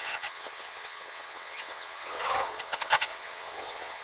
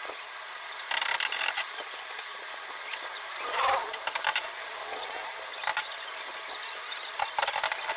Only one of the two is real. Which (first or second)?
second